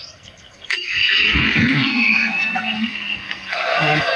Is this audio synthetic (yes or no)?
yes